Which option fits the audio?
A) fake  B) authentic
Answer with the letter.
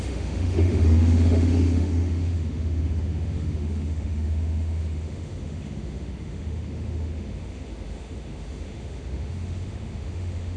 A